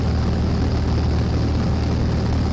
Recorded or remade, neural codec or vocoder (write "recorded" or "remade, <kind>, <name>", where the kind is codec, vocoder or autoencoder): recorded